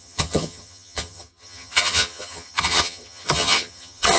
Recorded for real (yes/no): no